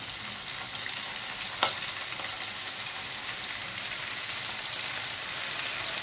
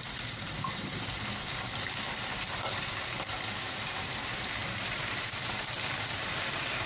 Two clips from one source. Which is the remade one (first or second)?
second